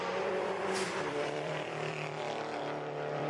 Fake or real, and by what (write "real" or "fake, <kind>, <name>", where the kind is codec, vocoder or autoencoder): fake, vocoder, BigVGAN v2